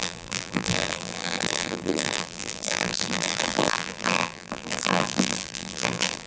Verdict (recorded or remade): remade